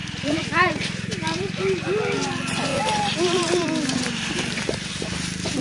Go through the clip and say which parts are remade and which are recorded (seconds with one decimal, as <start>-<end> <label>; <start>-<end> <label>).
0.0-1.6 remade; 1.6-2.7 recorded; 2.7-4.9 remade; 4.9-5.6 recorded